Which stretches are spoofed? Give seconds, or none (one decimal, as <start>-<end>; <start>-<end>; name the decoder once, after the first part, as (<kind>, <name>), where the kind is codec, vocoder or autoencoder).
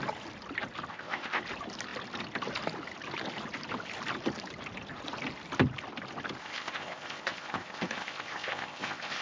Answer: 0.9-1.4 (codec, ZipCodec); 6.4-9.2